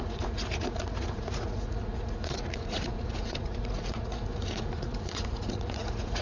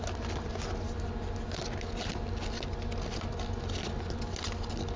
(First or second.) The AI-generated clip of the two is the first